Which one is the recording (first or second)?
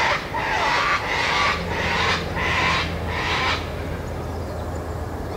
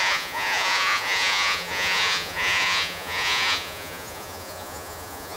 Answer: first